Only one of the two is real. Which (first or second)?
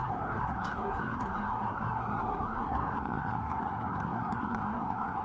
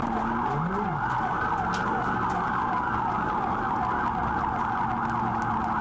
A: second